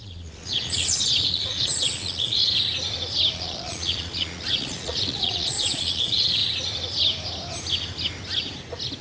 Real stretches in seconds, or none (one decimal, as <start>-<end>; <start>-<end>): 2.4-3.3; 6.4-9.0